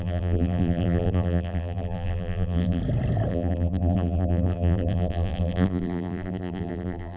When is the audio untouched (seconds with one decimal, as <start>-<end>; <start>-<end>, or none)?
2.8-3.3